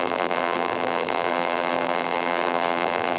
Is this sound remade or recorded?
remade